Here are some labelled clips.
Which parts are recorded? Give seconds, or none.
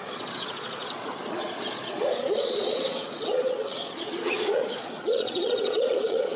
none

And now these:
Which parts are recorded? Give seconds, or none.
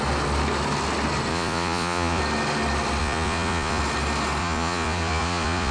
0.0-1.3; 2.2-3.0; 3.8-4.4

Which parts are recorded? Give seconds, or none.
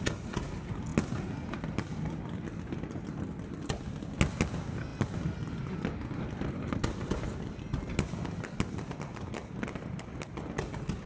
0.0-11.1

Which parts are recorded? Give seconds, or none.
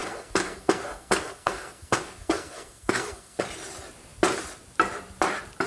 3.4-5.7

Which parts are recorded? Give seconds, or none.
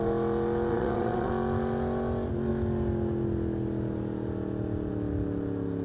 0.0-0.7; 1.3-5.8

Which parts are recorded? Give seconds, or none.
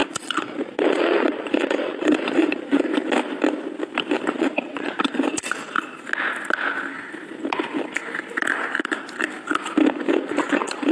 2.9-4.3; 5.6-9.9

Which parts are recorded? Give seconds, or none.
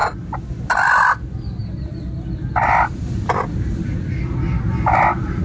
0.0-5.4